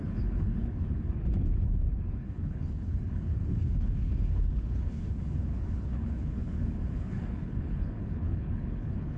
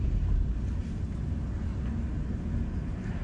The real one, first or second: second